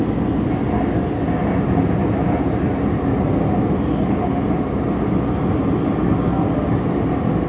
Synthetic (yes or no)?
no